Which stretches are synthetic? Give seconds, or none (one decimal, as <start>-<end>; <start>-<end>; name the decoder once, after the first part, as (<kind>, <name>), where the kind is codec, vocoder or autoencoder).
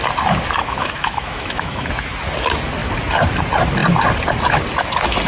0.6-1.9 (autoencoder, DAC-VAE)